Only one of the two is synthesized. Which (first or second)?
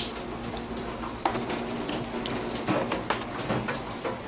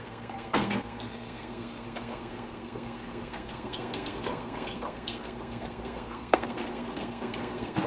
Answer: second